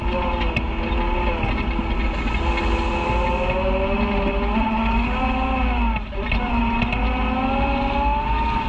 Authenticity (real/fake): real